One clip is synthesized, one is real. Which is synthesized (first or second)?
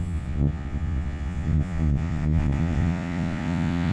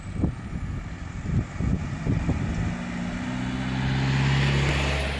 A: first